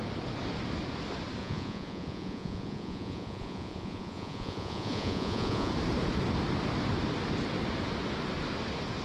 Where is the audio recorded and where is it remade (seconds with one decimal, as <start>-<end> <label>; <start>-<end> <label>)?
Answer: 0.0-1.4 recorded; 1.4-5.7 remade; 5.7-9.0 recorded

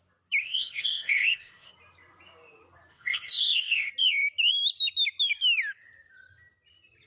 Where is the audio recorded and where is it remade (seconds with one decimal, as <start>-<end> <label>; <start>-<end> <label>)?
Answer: 0.0-0.4 recorded; 0.4-1.7 remade; 1.7-2.9 recorded; 2.9-3.9 remade; 3.9-7.1 recorded

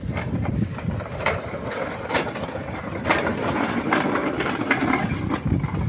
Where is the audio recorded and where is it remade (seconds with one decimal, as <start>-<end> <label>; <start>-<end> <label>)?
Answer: 0.0-4.8 remade; 4.8-5.9 recorded

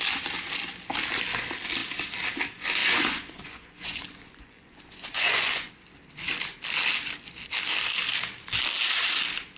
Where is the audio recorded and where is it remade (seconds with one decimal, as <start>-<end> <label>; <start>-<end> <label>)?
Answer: 0.0-2.8 recorded; 2.8-5.7 remade; 5.7-9.6 recorded

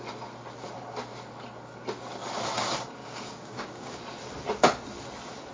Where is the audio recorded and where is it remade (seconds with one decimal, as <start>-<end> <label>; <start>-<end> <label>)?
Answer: 0.0-3.0 recorded; 3.0-4.0 remade; 4.0-5.5 recorded

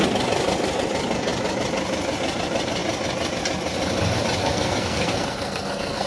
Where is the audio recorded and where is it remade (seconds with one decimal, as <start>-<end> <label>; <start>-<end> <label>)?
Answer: 0.0-4.4 recorded; 4.4-6.1 remade

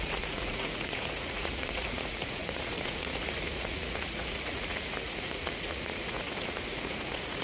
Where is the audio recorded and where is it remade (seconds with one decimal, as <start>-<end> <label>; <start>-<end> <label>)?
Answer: 0.0-7.4 remade